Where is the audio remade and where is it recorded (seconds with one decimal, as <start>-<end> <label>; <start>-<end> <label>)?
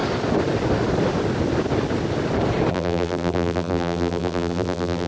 0.0-2.7 recorded; 2.7-5.1 remade